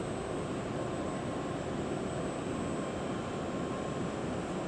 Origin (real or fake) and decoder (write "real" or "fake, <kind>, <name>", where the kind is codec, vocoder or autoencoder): real